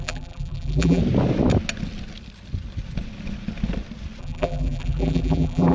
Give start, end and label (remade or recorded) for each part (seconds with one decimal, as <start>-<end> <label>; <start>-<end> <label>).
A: 0.0-1.0 remade; 1.0-4.2 recorded; 4.2-5.7 remade